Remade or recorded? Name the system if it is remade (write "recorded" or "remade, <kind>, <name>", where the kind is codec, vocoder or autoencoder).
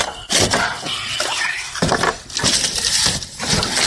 recorded